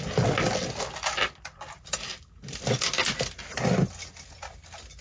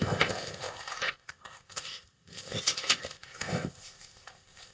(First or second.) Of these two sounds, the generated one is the second